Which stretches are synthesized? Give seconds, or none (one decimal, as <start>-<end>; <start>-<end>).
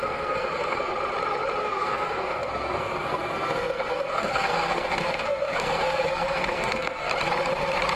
0.0-0.9; 1.6-7.1